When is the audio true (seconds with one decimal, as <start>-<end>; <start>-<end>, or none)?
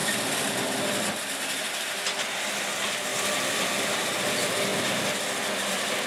0.0-6.1